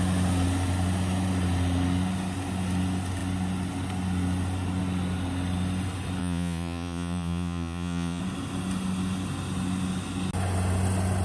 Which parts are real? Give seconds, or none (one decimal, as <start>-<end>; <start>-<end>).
0.0-6.2; 8.2-11.2